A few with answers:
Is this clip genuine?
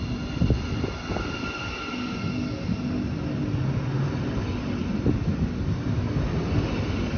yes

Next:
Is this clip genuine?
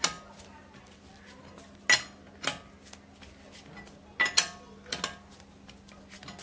yes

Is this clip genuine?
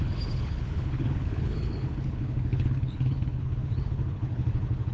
no